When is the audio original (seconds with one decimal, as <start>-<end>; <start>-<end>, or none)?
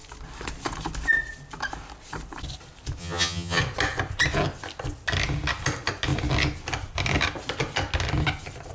0.0-3.0; 3.6-8.7